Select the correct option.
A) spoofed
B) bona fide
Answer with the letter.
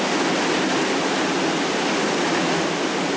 B